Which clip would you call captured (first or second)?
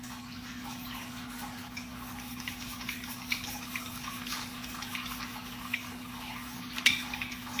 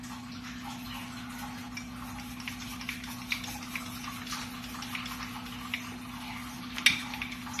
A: second